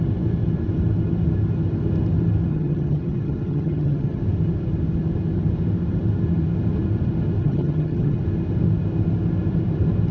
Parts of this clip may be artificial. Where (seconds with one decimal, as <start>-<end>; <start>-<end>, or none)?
2.5-4.2; 7.4-8.2